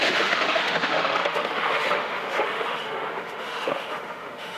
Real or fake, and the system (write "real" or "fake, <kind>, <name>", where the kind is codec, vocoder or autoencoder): fake, autoencoder, DAC-VAE